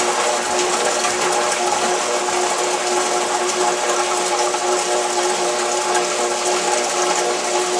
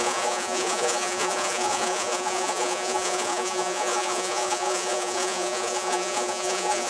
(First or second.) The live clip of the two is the first